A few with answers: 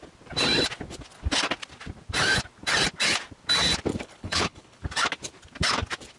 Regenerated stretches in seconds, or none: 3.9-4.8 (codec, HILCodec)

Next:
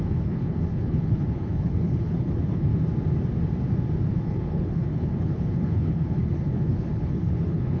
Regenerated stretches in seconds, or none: 0.0-2.7 (codec, HILCodec); 4.1-7.8

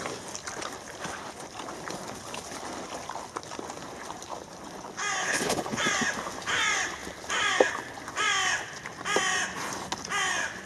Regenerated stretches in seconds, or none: 5.2-5.8 (codec, HILCodec)

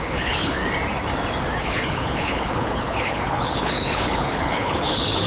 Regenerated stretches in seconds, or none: 0.0-0.6 (codec, HILCodec); 1.6-5.3

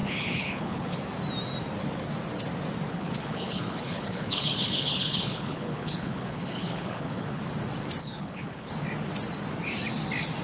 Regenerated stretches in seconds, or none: 0.0-1.0 (codec, HILCodec); 2.9-7.4; 8.0-8.7

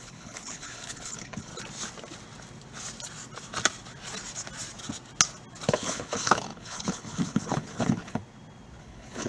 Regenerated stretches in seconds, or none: 0.0-1.5 (codec, HILCodec); 5.7-8.2; 8.8-9.3